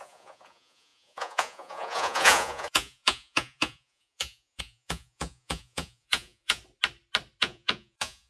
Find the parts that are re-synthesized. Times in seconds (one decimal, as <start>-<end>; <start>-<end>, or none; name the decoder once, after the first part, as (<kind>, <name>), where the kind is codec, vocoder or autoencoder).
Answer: 0.0-6.6 (vocoder, Vocos); 7.4-8.3